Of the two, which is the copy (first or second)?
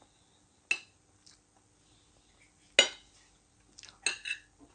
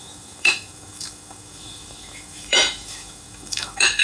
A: second